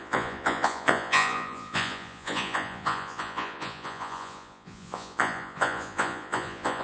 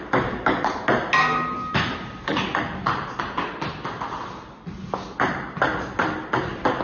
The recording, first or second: second